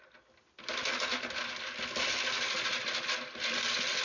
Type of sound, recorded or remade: recorded